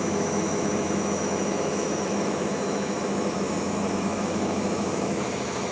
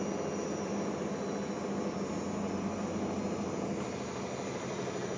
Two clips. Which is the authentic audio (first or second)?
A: second